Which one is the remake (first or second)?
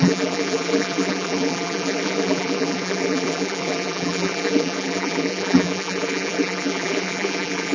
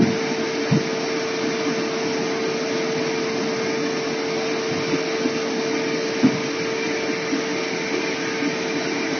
first